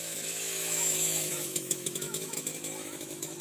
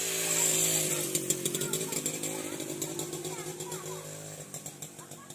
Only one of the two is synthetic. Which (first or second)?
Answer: first